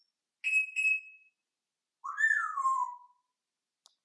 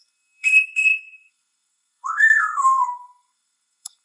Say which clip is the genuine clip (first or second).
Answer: first